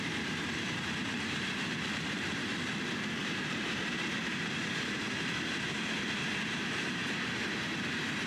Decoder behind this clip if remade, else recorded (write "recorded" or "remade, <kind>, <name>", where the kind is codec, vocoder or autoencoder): remade, vocoder, BigVGAN v2